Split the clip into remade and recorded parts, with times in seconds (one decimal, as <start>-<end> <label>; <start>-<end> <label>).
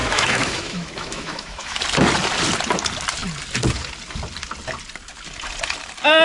0.0-1.8 remade; 1.8-6.2 recorded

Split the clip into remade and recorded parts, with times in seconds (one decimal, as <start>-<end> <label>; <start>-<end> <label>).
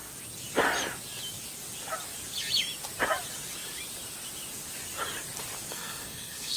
0.0-5.7 recorded; 5.7-6.6 remade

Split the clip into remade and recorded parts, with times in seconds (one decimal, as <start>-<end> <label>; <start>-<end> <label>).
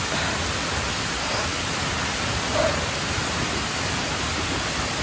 0.0-5.0 recorded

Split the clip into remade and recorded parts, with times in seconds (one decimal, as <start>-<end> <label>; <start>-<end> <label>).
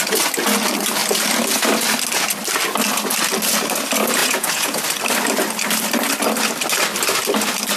0.0-4.2 recorded; 4.2-4.8 remade; 4.8-7.8 recorded